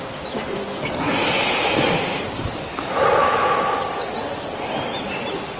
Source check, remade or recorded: recorded